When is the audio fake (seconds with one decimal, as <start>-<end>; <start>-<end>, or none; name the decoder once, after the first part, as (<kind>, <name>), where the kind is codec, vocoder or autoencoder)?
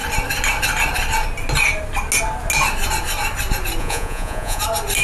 3.8-4.6 (vocoder, Vocos)